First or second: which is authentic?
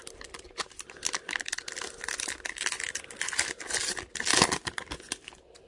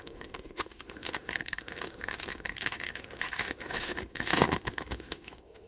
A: first